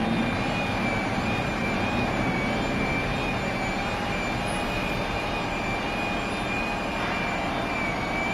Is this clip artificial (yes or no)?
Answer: no